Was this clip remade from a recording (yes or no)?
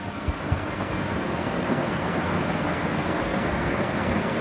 yes